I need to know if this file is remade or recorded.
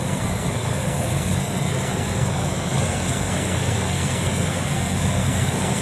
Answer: remade